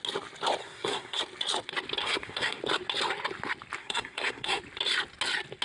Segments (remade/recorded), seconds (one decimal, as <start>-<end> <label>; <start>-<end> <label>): 0.0-0.6 recorded; 0.6-1.2 remade; 1.2-2.0 recorded; 2.0-2.6 remade; 2.6-3.8 recorded; 3.8-4.6 remade; 4.6-5.6 recorded